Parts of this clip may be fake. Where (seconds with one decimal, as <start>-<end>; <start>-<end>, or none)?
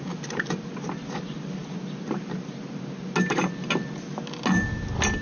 none